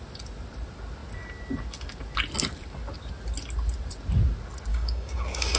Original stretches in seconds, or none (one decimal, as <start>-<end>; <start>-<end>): 0.0-4.7